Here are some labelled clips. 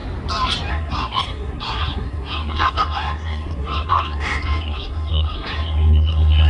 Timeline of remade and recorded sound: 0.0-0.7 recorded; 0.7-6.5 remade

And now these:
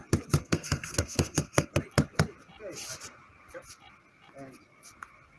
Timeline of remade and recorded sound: 0.0-0.4 recorded; 0.4-1.7 remade; 1.7-5.4 recorded

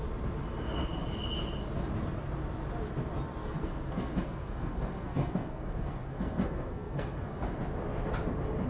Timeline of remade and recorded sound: 0.0-3.4 recorded; 3.4-7.6 remade; 7.6-8.7 recorded

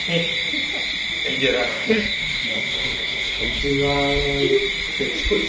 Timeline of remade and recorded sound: 0.0-1.7 recorded; 1.7-3.6 remade; 3.6-5.5 recorded